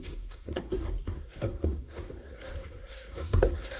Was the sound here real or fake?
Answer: fake